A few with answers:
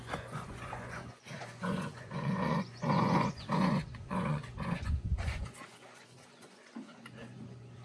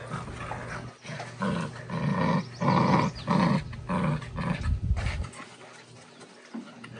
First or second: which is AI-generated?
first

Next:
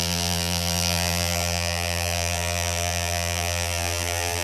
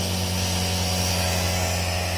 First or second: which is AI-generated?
first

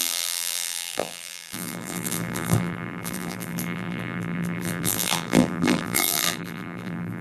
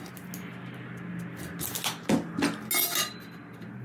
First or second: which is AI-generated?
first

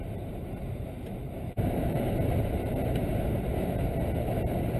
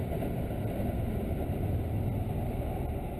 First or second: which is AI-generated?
first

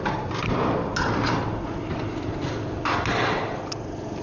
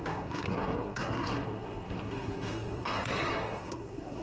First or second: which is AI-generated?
second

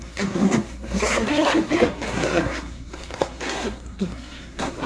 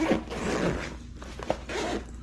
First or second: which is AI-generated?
first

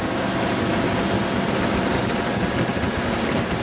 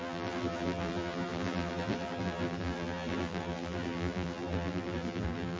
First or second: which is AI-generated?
second